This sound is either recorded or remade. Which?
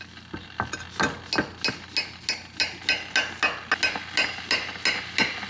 recorded